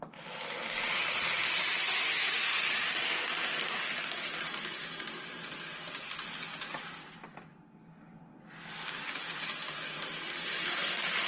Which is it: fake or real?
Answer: real